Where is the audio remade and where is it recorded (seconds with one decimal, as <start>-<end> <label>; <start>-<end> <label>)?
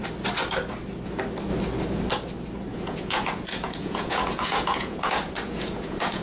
0.0-2.7 recorded; 2.7-6.2 remade